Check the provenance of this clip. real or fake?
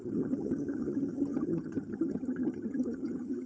fake